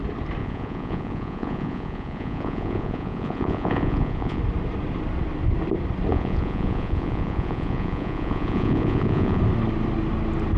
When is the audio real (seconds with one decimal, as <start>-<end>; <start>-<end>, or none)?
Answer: 0.0-0.4; 4.4-6.1; 9.4-10.6